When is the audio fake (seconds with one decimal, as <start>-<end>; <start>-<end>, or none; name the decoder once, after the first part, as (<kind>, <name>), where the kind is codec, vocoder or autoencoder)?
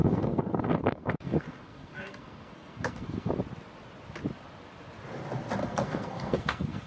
0.0-3.3 (codec, SNAC); 5.6-6.9